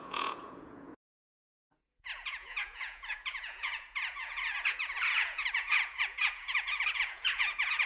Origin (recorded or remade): remade